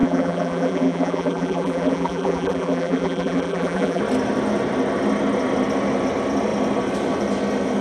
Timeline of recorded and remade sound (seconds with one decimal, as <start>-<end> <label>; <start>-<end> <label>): 0.0-4.0 remade; 4.0-7.8 recorded